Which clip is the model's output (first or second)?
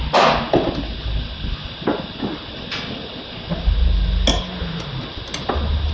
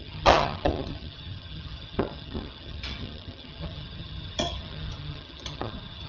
second